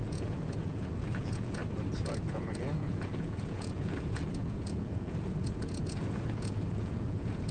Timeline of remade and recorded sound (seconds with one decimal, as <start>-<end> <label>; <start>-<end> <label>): 0.0-1.6 remade; 1.6-2.2 recorded; 2.2-7.5 remade